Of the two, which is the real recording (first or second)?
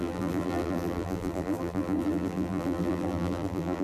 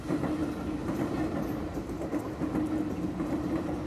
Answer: second